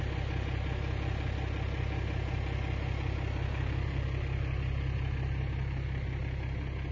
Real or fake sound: real